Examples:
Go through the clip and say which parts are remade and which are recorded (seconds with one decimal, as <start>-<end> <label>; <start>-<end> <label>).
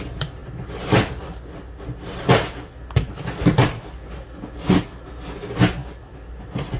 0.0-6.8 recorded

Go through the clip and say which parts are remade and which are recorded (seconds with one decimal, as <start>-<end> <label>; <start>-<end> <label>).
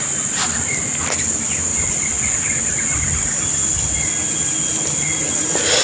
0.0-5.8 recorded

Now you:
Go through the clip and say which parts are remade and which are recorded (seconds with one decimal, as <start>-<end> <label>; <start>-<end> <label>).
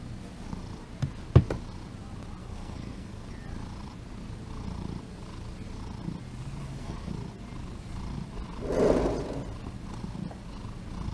0.0-2.4 recorded; 2.4-3.3 remade; 3.3-6.6 recorded; 6.6-7.1 remade; 7.1-11.1 recorded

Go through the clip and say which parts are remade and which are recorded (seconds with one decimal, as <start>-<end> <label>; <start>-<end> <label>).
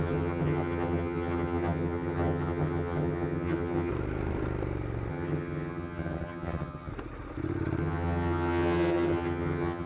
0.0-3.9 remade; 3.9-5.1 recorded; 5.1-6.9 remade; 6.9-7.8 recorded; 7.8-9.9 remade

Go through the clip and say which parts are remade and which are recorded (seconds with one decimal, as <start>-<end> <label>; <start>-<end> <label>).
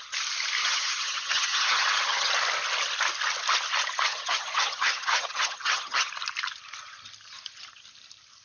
0.0-0.6 recorded; 0.6-2.3 remade; 2.3-4.1 recorded; 4.1-6.1 remade; 6.1-8.4 recorded